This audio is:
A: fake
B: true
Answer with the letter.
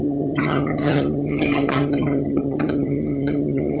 A